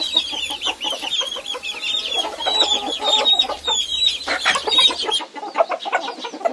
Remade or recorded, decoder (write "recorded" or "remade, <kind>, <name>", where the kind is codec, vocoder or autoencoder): recorded